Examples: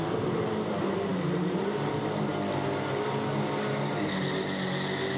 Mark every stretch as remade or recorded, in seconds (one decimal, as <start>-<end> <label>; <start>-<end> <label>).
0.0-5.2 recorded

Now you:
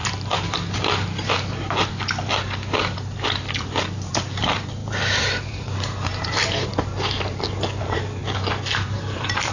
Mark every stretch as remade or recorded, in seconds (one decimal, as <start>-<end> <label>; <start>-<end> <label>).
0.0-4.1 recorded; 4.1-6.7 remade; 6.7-7.8 recorded; 7.8-8.2 remade; 8.2-8.7 recorded; 8.7-9.5 remade

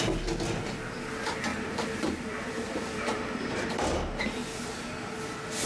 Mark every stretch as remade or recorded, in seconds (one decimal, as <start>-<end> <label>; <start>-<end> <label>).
0.0-1.5 recorded; 1.5-4.7 remade; 4.7-5.7 recorded

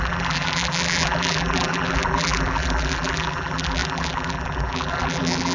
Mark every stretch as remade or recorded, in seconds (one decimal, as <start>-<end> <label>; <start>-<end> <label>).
0.0-5.5 remade

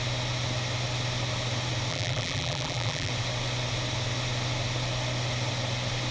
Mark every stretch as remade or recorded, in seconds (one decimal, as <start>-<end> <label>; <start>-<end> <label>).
0.0-1.9 recorded; 1.9-3.1 remade; 3.1-6.1 recorded